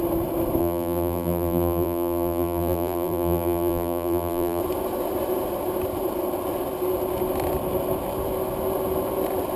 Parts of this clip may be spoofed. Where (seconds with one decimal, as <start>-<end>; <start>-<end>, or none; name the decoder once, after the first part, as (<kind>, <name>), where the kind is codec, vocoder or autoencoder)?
0.6-4.6 (vocoder, BigVGAN v2)